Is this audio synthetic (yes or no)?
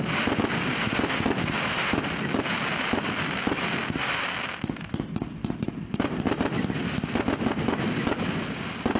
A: no